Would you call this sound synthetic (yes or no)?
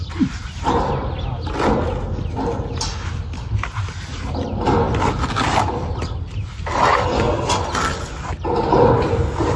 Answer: no